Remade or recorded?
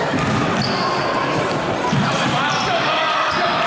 remade